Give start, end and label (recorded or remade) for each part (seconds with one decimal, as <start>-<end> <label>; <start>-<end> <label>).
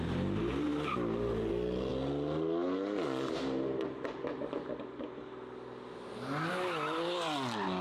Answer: 0.0-7.8 recorded